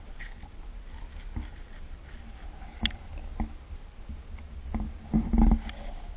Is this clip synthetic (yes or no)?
no